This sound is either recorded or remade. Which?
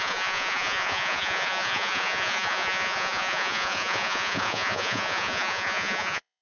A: remade